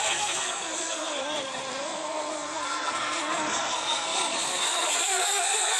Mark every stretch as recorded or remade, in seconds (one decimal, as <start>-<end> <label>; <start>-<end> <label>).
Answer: 0.0-1.2 remade; 1.2-1.8 recorded; 1.8-5.8 remade